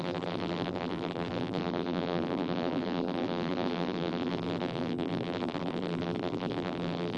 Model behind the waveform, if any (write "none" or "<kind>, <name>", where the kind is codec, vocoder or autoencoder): vocoder, BigVGAN v2